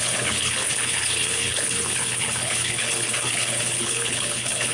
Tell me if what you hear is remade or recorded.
remade